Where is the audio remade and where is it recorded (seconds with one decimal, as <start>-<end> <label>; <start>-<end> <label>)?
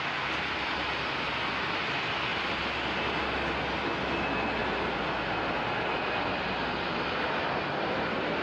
0.0-4.6 recorded; 4.6-5.1 remade; 5.1-8.4 recorded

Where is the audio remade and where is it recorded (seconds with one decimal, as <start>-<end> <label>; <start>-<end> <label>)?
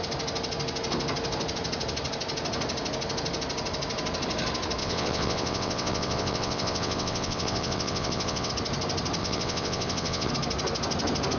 0.0-4.8 recorded; 4.8-8.5 remade; 8.5-9.2 recorded; 9.2-10.3 remade; 10.3-11.4 recorded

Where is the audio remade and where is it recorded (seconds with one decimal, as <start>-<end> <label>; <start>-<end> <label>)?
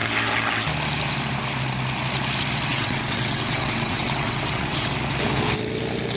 0.0-2.7 recorded; 2.7-4.9 remade; 4.9-6.2 recorded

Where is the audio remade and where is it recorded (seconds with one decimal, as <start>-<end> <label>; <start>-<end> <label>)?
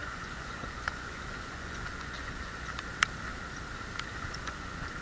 0.0-2.7 remade; 2.7-4.1 recorded; 4.1-5.0 remade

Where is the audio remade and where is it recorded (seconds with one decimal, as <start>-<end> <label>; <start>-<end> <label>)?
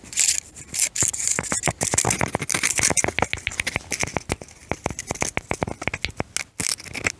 0.0-7.2 recorded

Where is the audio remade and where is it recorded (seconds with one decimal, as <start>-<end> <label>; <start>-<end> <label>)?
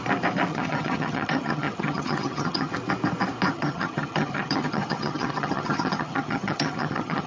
0.0-0.5 recorded; 0.5-2.7 remade; 2.7-3.5 recorded; 3.5-7.3 remade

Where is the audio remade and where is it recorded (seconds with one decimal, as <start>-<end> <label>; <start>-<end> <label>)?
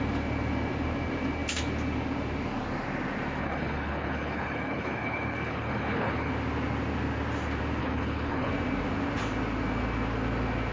0.0-3.4 recorded; 3.4-6.3 remade; 6.3-7.8 recorded; 7.8-8.5 remade; 8.5-10.7 recorded